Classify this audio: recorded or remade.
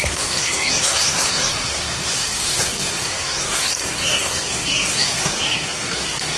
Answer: remade